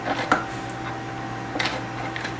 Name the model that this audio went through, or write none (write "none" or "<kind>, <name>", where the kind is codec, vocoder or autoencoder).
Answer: none